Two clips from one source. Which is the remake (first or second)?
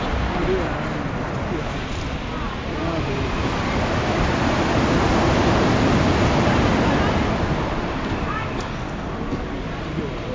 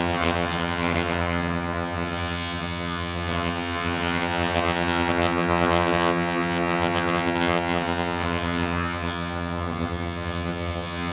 second